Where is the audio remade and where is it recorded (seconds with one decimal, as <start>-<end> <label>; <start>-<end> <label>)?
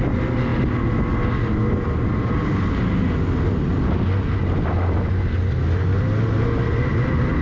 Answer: 0.0-7.4 recorded